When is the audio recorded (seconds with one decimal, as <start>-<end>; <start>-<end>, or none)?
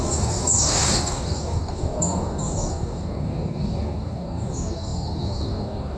none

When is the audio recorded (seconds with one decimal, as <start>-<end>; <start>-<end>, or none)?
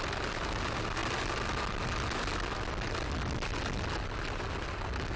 0.0-5.2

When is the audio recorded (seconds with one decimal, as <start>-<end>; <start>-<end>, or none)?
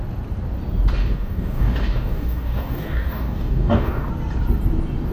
0.0-1.0; 4.1-5.1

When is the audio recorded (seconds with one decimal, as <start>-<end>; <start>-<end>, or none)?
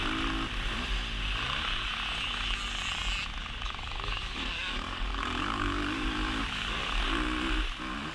0.0-3.4; 7.0-8.1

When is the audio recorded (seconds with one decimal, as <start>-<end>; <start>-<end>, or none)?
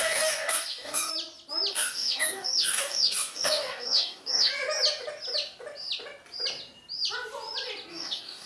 1.1-1.7; 4.5-7.9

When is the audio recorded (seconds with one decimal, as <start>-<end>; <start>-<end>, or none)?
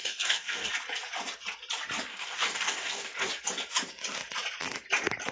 0.7-2.1; 3.3-5.3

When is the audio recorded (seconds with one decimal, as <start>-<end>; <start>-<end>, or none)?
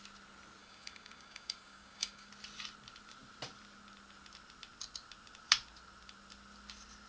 0.0-0.6; 2.3-7.1